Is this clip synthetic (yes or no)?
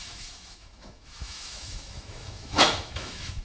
yes